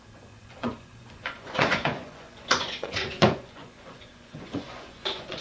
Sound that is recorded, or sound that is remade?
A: remade